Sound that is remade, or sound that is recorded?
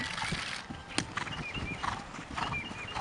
recorded